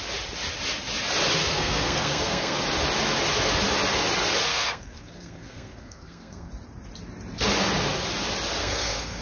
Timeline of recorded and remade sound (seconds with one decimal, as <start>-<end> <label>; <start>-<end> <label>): 0.0-1.4 recorded; 1.4-2.6 remade; 2.6-4.5 recorded; 4.5-6.5 remade; 6.5-8.6 recorded; 8.6-9.2 remade